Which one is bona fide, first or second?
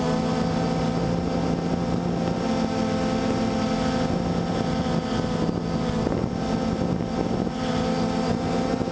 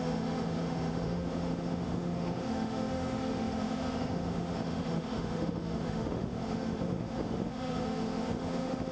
first